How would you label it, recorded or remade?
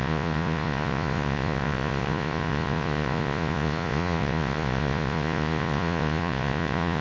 remade